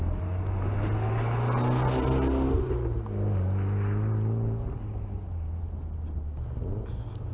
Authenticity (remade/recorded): recorded